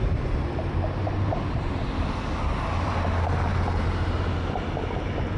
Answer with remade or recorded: recorded